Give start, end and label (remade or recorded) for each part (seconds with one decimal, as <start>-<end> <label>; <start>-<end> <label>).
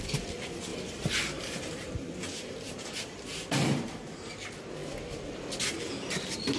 0.0-0.7 recorded; 0.7-4.3 remade; 4.3-6.6 recorded